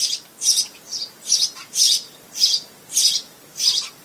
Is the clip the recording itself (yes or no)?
no